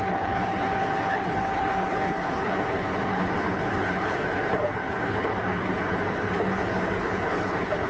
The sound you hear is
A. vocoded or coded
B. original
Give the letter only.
A